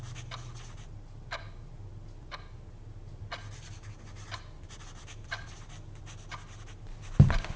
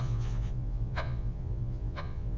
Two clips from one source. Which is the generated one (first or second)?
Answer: second